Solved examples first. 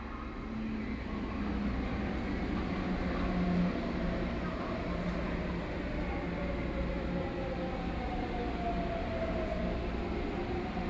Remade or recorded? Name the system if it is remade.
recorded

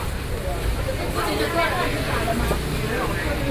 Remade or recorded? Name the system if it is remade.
recorded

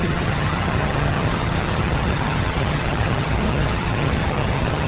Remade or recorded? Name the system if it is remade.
remade, vocoder, HiFi-GAN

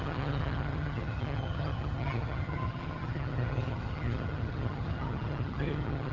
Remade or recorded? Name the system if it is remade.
remade, vocoder, HiFi-GAN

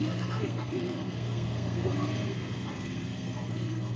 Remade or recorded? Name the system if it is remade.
remade, codec, SNAC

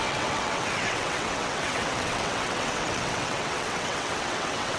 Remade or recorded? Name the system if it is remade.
remade, vocoder, WaveNeXt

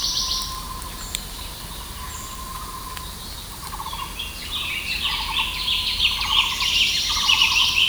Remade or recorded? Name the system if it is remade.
recorded